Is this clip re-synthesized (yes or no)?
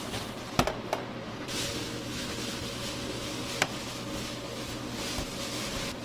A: no